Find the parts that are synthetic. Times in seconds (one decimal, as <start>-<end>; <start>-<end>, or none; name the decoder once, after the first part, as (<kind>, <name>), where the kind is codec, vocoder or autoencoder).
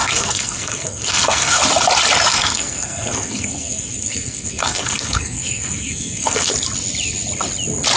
0.0-1.6 (codec, SNAC); 2.3-6.5